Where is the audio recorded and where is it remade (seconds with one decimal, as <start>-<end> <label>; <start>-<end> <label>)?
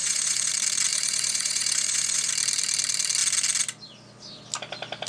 0.0-0.5 remade; 0.5-0.9 recorded; 0.9-2.3 remade; 2.3-5.1 recorded